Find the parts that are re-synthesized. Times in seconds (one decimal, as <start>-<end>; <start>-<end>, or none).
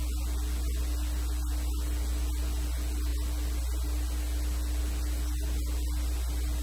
none